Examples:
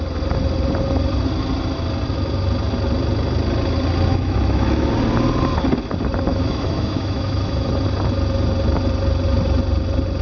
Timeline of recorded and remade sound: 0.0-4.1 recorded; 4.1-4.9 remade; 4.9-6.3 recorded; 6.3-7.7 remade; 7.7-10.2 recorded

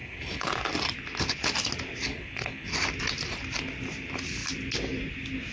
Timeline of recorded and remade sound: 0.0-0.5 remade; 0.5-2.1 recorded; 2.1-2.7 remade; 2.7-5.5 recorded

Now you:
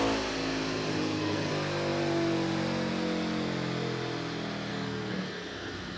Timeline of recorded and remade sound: 0.0-1.0 recorded; 1.0-1.5 remade; 1.5-4.7 recorded; 4.7-6.0 remade